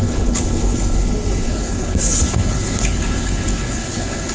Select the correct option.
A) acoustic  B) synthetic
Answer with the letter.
B